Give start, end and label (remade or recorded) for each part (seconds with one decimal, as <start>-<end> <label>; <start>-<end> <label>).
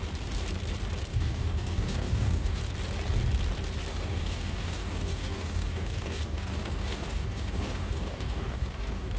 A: 0.0-1.1 recorded; 1.1-2.6 remade; 2.6-3.9 recorded; 3.9-9.2 remade